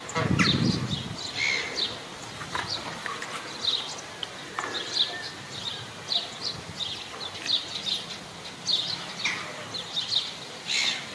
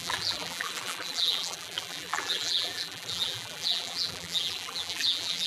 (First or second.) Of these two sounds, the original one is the first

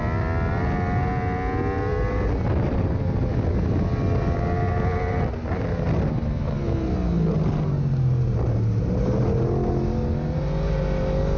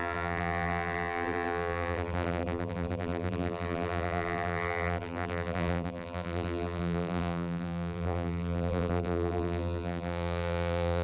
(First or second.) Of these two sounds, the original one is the first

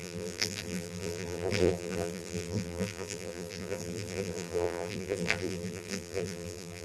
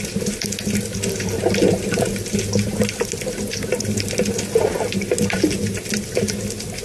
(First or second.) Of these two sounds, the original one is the second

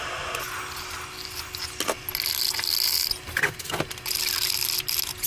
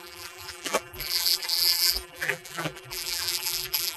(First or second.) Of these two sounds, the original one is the first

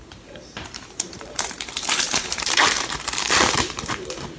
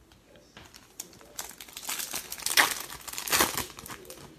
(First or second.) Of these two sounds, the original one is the second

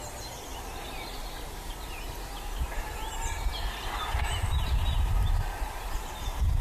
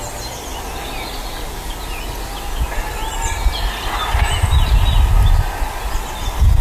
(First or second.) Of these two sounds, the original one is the second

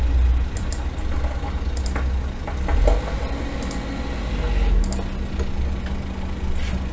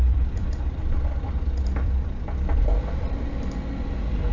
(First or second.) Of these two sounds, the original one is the first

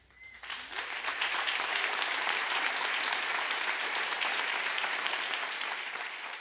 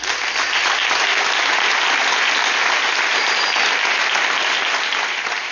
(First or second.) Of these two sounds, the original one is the second